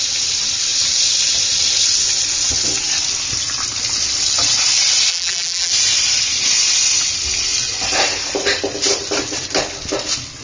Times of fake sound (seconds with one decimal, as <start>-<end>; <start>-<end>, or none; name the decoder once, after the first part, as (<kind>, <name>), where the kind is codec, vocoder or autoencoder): 5.1-5.7 (vocoder, BigVGAN v2)